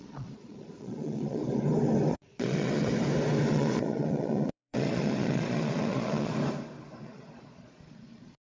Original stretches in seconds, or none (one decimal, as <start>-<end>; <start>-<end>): 1.4-2.1; 2.9-3.5; 6.3-7.0